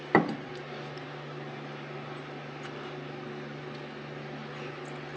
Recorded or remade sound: recorded